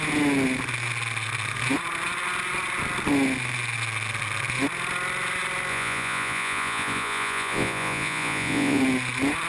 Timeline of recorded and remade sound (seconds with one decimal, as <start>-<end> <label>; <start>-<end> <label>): 0.0-5.7 recorded; 5.7-8.8 remade; 8.8-9.5 recorded